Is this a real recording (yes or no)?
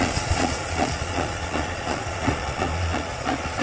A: no